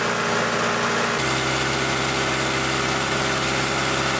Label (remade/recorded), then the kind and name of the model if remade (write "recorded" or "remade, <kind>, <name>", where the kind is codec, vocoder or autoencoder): recorded